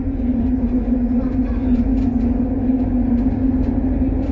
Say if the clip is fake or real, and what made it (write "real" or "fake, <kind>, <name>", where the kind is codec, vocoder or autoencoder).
real